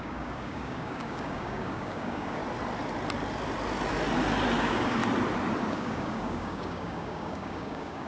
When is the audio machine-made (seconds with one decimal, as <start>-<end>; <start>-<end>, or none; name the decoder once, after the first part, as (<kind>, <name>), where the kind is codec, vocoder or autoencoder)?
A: 0.0-2.4 (codec, DAC); 4.6-5.0; 5.7-8.1